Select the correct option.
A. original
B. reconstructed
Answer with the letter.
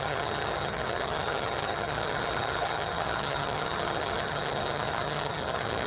B